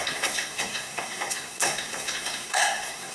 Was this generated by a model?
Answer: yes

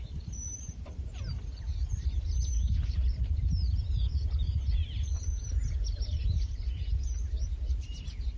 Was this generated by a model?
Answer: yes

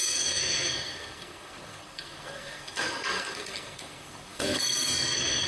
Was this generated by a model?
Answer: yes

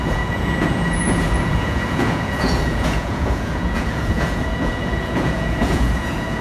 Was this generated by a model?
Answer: yes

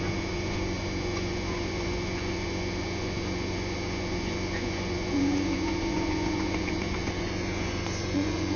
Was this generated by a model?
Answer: yes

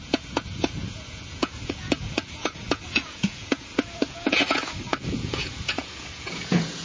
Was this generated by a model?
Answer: yes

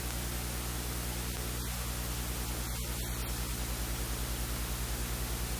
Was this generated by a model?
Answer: no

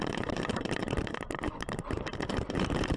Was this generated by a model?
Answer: yes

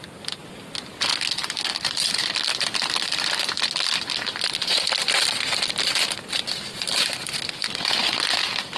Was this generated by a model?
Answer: yes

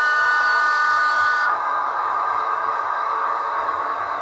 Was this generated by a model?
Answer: yes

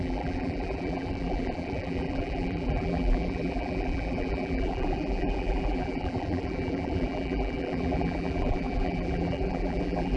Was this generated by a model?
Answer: yes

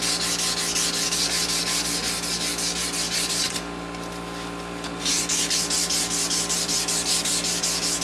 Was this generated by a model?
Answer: no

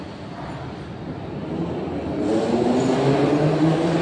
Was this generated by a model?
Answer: no